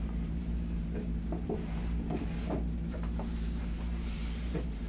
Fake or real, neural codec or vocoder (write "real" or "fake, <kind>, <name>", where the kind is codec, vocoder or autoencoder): fake, vocoder, BigVGAN v2